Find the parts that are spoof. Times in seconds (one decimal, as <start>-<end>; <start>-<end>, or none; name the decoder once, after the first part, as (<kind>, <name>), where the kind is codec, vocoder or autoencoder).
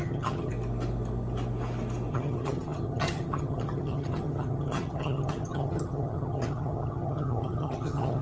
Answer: 0.0-0.5 (vocoder, HiFi-GAN); 2.1-8.2